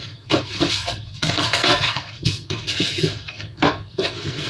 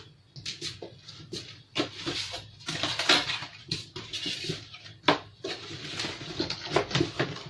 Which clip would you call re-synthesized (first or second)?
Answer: first